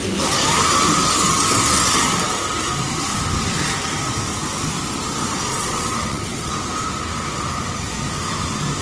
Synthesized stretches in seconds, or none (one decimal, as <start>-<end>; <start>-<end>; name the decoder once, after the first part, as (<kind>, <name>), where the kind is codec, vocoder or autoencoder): 5.5-6.5 (vocoder, WaveNeXt)